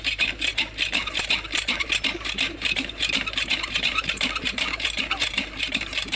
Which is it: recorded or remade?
remade